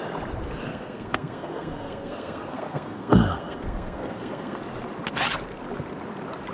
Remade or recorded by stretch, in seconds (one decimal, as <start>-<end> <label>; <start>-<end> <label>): 0.0-0.7 recorded; 0.7-4.6 remade; 4.6-6.5 recorded